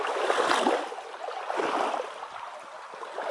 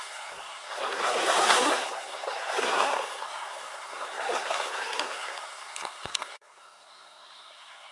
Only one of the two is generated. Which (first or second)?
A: second